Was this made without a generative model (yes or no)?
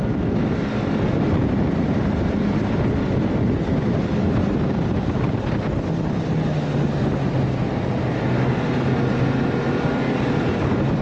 yes